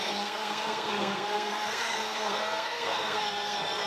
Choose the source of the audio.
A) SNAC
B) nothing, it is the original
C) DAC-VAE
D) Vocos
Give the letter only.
A